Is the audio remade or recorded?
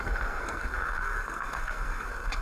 remade